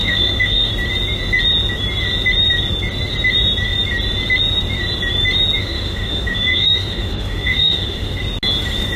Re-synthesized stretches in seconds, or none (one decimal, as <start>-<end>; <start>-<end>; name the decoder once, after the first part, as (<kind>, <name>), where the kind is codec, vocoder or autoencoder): 0.0-0.7 (autoencoder, DAC-VAE); 5.6-8.2